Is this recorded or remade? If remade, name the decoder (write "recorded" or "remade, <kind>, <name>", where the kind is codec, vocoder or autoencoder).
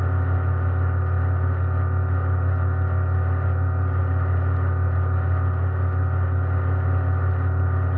recorded